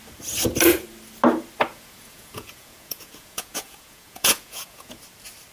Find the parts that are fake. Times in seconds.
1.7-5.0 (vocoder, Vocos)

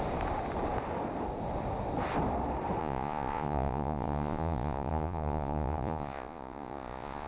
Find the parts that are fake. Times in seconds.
2.8-7.3 (vocoder, Vocos)